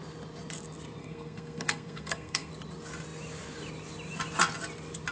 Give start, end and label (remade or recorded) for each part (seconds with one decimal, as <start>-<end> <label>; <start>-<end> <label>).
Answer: 0.0-1.0 recorded; 1.0-2.5 remade; 2.5-5.1 recorded